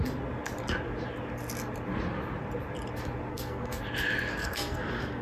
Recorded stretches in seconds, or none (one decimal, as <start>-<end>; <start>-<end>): 0.0-3.3; 3.8-4.3